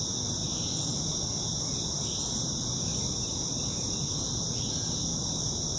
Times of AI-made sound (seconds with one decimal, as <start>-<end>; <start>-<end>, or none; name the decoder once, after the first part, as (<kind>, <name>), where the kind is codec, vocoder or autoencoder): none